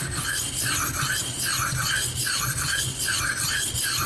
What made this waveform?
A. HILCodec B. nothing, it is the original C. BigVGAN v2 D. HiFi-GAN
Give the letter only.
B